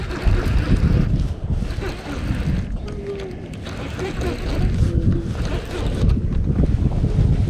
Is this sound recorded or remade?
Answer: recorded